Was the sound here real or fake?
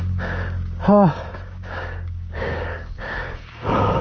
fake